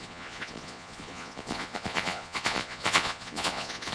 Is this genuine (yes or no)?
no